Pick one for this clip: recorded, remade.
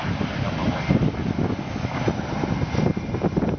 recorded